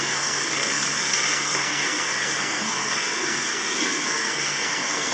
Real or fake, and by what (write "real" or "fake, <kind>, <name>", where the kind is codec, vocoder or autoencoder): fake, codec, SNAC